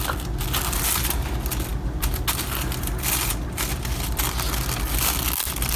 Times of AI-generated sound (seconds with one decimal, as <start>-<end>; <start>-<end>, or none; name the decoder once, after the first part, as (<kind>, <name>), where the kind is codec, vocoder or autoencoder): none

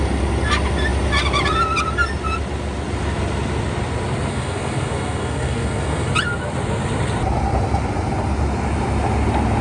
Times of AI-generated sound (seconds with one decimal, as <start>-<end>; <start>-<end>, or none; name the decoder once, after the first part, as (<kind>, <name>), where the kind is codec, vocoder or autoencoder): 4.3-6.1 (codec, SNAC)

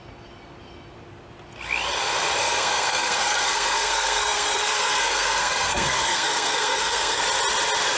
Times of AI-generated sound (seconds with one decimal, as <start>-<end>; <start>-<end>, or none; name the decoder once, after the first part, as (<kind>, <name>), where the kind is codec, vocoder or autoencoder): 2.4-7.2 (codec, SNAC)

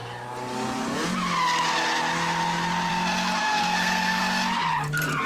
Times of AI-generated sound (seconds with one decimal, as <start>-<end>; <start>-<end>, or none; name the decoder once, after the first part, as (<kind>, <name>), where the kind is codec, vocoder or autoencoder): 3.4-4.2 (codec, SNAC)

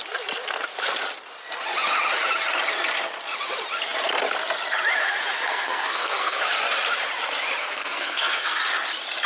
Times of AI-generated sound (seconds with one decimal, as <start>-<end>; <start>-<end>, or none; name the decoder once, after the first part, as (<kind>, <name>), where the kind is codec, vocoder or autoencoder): 5.5-6.4 (codec, SNAC); 7.6-8.6